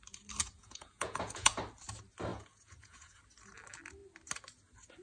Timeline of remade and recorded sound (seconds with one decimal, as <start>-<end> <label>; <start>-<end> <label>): 0.0-0.4 recorded; 0.4-1.6 remade; 1.6-2.3 recorded; 2.3-3.2 remade; 3.2-5.0 recorded